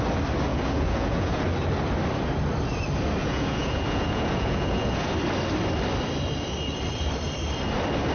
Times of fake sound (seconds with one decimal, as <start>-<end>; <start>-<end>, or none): 0.5-1.4; 3.2-5.1